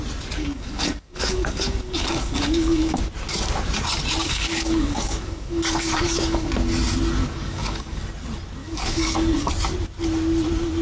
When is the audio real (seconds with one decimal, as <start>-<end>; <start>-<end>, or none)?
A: 0.0-0.4; 3.0-4.2; 6.5-7.2; 8.0-8.6; 9.5-10.8